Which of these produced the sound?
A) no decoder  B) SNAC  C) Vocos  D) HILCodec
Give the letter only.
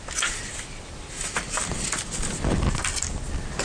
A